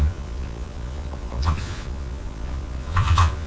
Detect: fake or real fake